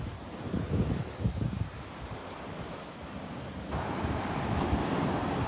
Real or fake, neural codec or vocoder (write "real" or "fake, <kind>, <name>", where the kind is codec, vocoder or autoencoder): fake, vocoder, BigVGAN v2